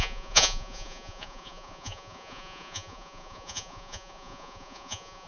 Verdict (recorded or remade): remade